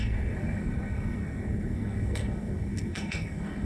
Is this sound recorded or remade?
remade